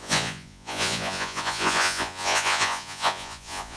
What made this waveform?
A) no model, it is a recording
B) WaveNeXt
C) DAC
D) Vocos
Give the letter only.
D